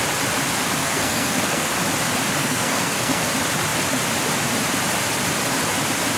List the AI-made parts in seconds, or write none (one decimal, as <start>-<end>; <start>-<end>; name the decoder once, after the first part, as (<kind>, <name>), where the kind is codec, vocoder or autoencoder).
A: 0.8-1.7 (codec, SNAC); 2.4-3.3